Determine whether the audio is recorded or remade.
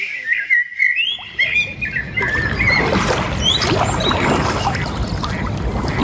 recorded